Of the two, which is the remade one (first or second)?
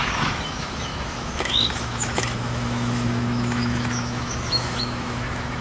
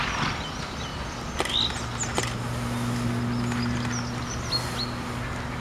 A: first